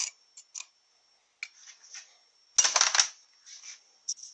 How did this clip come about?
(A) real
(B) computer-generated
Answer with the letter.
A